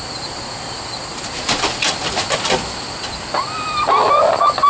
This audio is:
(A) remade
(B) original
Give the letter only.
B